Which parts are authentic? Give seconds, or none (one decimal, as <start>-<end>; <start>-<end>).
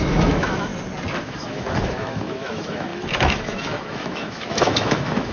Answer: 0.7-1.2